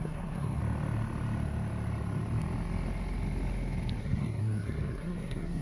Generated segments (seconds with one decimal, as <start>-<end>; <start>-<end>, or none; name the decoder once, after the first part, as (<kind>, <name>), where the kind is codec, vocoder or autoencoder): 0.0-0.6 (codec, SNAC); 4.0-5.6